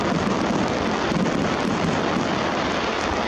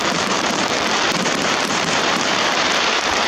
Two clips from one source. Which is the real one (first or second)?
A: first